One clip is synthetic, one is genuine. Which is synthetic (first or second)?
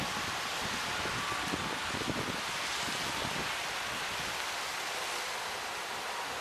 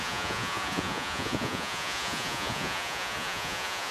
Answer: second